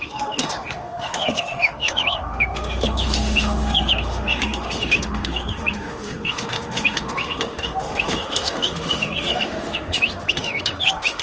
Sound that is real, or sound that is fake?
fake